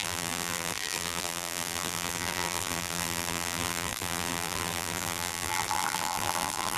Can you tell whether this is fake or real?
fake